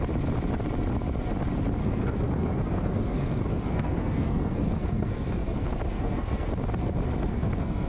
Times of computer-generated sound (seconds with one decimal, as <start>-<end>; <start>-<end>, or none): 1.8-6.5; 7.3-7.9